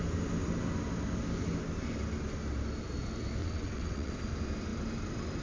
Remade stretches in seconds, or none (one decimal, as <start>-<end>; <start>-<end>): 3.4-4.1